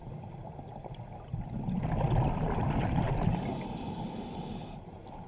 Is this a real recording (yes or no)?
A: yes